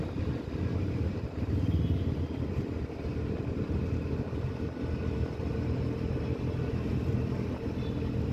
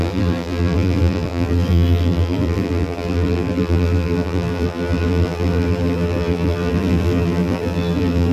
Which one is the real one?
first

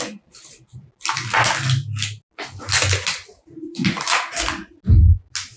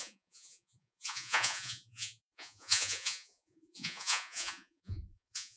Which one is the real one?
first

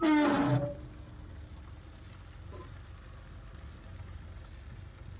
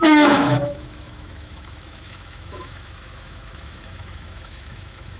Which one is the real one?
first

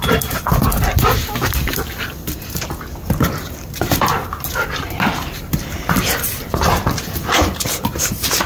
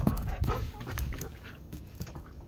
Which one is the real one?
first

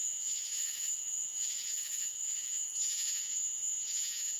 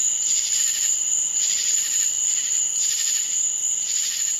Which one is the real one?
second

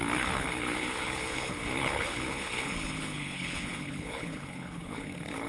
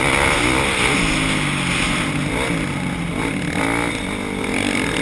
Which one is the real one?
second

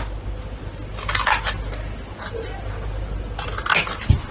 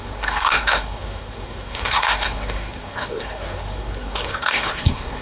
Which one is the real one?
first